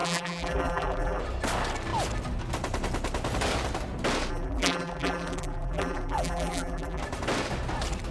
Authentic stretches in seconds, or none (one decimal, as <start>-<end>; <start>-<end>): 1.2-4.3; 7.0-8.1